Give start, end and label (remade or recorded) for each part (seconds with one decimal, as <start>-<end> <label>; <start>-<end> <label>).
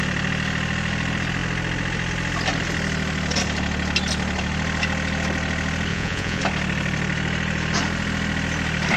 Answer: 0.0-5.9 recorded; 5.9-6.4 remade; 6.4-9.0 recorded